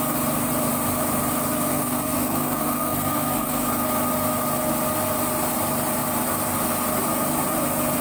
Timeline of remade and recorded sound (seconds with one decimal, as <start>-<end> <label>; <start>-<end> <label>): 0.0-1.7 recorded; 1.7-3.7 remade; 3.7-8.0 recorded